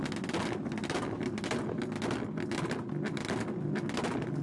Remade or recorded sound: recorded